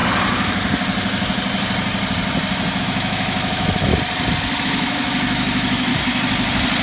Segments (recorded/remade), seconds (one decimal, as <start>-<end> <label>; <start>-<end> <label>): 0.0-2.8 recorded; 2.8-3.9 remade; 3.9-4.6 recorded; 4.6-5.9 remade; 5.9-6.8 recorded